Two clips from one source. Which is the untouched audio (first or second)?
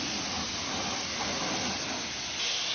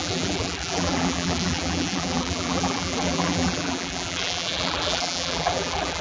first